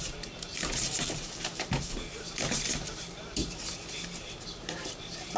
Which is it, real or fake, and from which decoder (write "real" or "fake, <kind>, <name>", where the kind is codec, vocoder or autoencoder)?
fake, vocoder, BigVGAN v2